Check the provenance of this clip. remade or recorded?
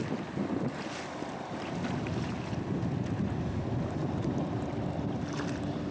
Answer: recorded